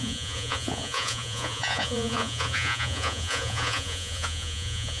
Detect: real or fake fake